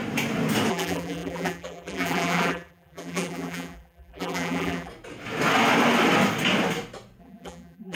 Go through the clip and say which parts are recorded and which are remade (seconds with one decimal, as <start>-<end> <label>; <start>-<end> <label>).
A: 0.0-0.7 recorded; 0.7-4.9 remade; 4.9-7.2 recorded; 7.2-8.0 remade